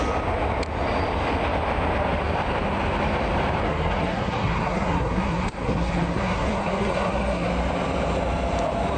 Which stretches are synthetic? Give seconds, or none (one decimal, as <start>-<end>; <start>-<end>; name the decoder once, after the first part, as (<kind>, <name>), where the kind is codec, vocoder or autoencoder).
3.6-7.5 (codec, SNAC)